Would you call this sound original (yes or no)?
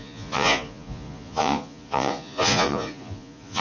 no